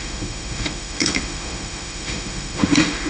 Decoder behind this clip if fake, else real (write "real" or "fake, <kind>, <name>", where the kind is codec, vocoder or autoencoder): fake, autoencoder, DAC-VAE